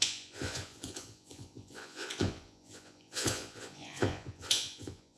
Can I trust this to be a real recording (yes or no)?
no